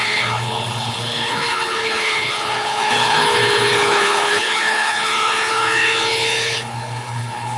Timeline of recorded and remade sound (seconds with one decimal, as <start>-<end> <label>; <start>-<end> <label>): 0.0-7.6 remade